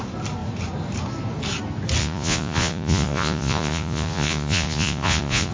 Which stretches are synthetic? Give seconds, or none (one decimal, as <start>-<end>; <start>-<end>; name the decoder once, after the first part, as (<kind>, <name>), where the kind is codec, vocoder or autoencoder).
2.0-5.5 (vocoder, Vocos)